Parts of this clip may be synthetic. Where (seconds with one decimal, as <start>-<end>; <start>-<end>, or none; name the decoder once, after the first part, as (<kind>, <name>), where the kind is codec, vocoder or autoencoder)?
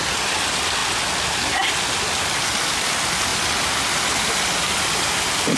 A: none